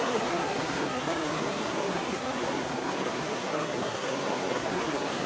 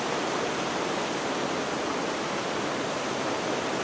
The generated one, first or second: first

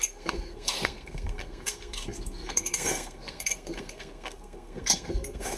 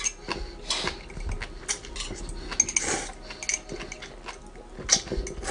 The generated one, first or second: first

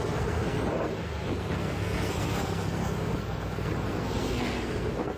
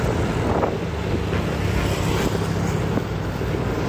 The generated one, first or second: first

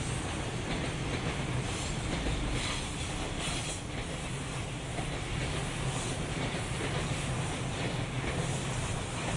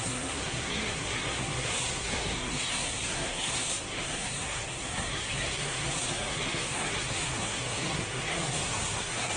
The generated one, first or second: second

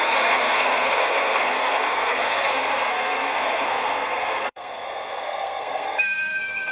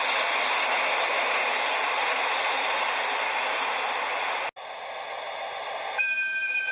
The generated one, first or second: first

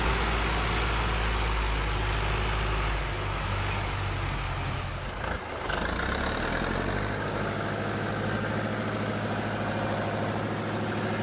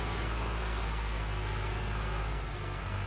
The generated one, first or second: second